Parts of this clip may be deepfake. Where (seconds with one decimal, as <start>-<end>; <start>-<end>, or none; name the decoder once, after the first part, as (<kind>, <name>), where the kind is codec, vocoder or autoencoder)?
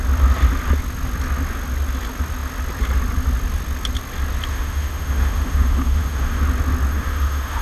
4.5-6.4 (autoencoder, DAC-VAE); 6.9-7.6